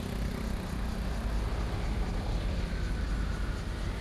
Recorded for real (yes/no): yes